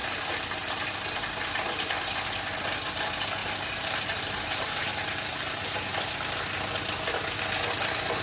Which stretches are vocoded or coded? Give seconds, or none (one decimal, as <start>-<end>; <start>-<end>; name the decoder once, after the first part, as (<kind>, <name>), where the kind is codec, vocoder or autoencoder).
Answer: 3.4-5.9 (vocoder, BigVGAN v2)